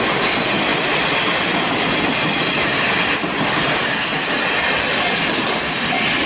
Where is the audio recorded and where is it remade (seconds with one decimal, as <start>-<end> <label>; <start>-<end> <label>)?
0.0-6.3 recorded